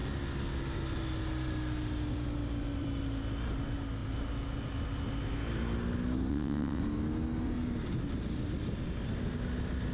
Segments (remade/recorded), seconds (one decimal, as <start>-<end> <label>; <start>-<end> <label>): 0.0-6.3 recorded; 6.3-6.8 remade; 6.8-9.9 recorded